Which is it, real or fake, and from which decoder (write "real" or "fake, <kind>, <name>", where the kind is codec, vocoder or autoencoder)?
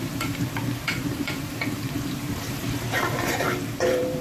fake, vocoder, BigVGAN v2